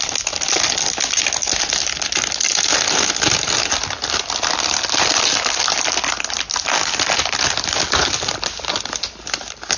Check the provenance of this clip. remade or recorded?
recorded